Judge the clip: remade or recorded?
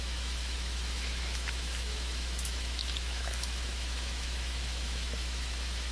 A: remade